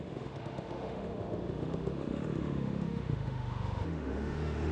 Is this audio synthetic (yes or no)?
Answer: yes